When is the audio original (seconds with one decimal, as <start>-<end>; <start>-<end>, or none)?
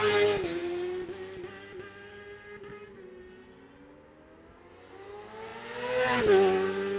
0.0-7.0